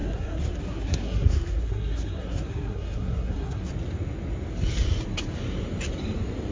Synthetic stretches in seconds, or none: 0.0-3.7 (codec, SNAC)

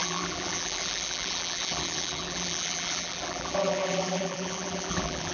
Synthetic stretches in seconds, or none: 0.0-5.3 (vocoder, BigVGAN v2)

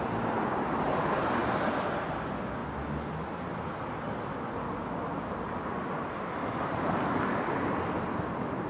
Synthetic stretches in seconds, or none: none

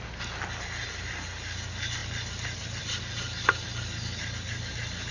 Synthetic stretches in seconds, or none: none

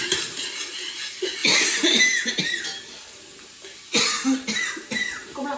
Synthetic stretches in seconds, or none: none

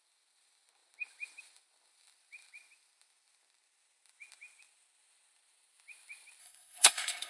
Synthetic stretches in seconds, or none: 6.4-7.3 (codec, SNAC)

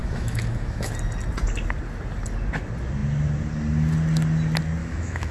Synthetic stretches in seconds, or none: 0.0-0.9 (autoencoder, DAC-VAE); 4.8-5.3

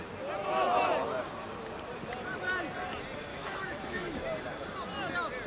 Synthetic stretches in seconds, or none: 3.3-4.2 (autoencoder, DAC-VAE)